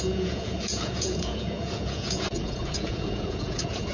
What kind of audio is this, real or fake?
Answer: fake